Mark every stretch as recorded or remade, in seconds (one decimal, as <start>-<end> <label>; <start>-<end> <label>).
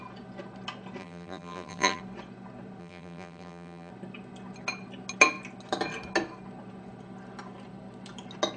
0.0-1.0 recorded; 1.0-2.0 remade; 2.0-2.8 recorded; 2.8-3.9 remade; 3.9-8.6 recorded